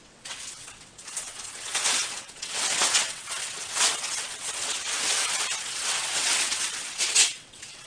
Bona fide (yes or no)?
no